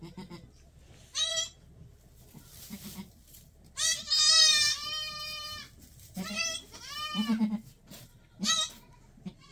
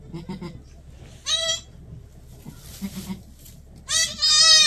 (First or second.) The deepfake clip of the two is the first